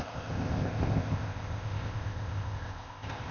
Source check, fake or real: fake